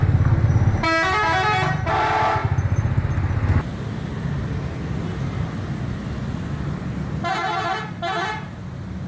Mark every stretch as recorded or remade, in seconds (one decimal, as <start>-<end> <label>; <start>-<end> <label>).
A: 0.0-9.1 recorded